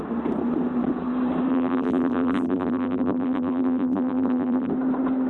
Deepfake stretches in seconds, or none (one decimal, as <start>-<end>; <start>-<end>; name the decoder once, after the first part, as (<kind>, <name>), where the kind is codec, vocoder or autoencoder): 1.5-4.7 (vocoder, BigVGAN v2)